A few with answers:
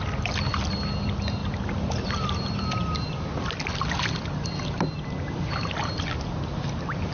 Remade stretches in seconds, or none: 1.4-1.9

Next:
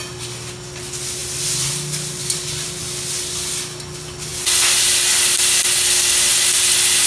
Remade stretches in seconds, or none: none

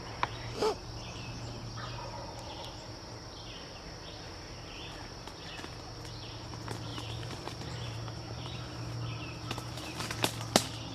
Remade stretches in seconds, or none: 0.8-1.7; 6.9-10.0